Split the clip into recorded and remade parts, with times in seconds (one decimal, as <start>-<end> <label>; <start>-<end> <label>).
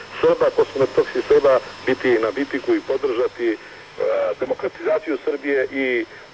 0.0-3.8 recorded; 3.8-5.0 remade; 5.0-6.3 recorded